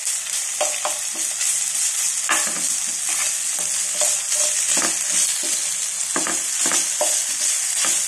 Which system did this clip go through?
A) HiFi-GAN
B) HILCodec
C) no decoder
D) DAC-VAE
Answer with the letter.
C